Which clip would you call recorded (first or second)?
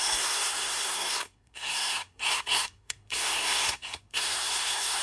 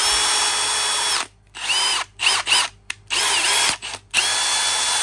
second